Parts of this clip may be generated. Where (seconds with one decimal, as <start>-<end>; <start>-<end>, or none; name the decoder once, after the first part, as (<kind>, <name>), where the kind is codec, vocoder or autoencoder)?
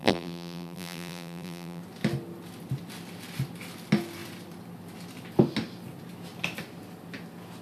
0.0-1.8 (vocoder, BigVGAN v2)